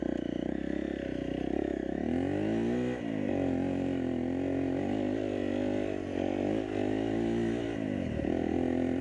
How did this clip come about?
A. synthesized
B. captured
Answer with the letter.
B